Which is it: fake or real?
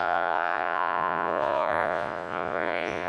fake